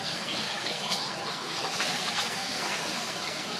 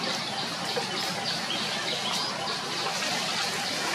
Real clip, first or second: second